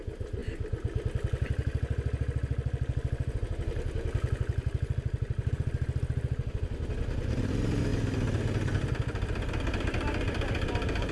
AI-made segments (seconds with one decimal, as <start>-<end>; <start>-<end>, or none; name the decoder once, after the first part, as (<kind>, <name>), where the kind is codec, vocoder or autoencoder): none